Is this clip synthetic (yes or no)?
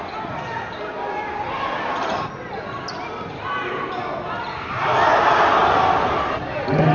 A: no